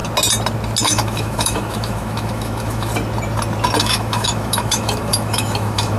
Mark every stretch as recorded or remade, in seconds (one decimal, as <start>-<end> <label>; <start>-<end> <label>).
0.0-0.8 recorded; 0.8-2.9 remade; 2.9-3.8 recorded; 3.8-6.0 remade